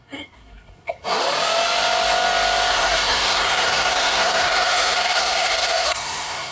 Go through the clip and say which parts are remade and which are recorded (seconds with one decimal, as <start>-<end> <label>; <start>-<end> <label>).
0.0-1.2 remade; 1.2-2.7 recorded; 2.7-6.5 remade